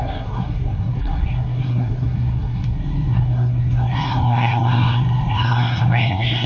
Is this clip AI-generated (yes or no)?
yes